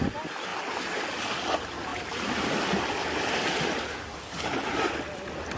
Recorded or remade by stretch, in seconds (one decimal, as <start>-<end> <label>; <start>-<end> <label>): 0.0-1.9 recorded; 1.9-4.2 remade; 4.2-4.7 recorded; 4.7-5.6 remade